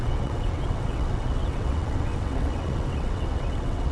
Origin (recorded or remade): remade